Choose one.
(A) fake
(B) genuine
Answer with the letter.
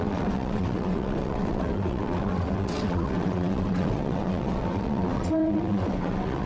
A